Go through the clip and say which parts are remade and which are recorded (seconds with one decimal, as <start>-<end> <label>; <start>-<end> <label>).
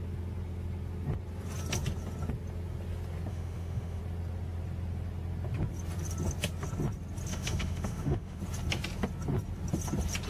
0.0-3.3 recorded; 3.3-4.0 remade; 4.0-7.3 recorded; 7.3-8.4 remade; 8.4-10.3 recorded